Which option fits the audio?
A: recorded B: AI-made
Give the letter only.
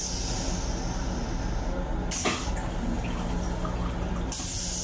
A